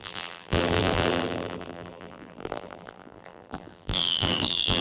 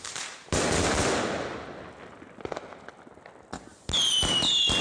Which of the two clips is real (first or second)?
second